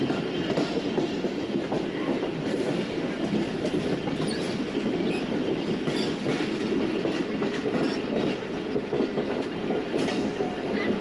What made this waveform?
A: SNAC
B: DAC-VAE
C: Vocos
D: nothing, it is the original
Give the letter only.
D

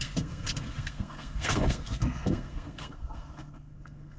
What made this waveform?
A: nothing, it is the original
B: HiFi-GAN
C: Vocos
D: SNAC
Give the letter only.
D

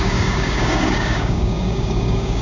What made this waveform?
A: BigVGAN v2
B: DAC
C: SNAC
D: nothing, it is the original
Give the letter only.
B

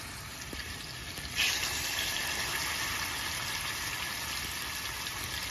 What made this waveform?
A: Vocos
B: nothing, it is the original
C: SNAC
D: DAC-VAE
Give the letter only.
B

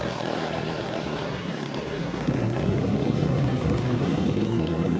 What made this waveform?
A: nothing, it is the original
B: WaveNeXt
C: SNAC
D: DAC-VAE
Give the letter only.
C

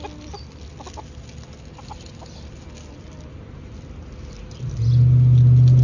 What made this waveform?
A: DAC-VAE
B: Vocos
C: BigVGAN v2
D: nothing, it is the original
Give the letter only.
D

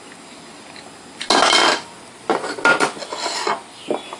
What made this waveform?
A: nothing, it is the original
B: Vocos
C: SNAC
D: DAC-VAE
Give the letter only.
A